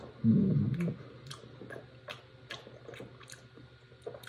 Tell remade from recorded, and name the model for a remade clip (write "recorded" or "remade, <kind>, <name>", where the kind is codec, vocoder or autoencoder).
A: recorded